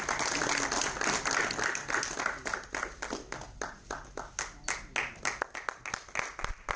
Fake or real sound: real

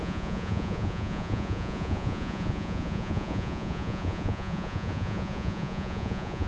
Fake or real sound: fake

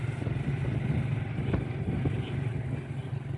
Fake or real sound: real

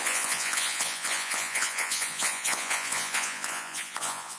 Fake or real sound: fake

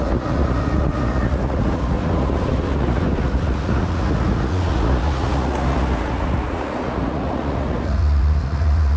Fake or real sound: fake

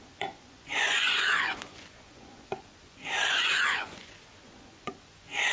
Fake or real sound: fake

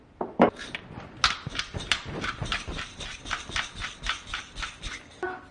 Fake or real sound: real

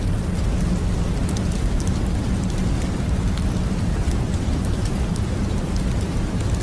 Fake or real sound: real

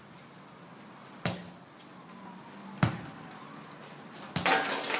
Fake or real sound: real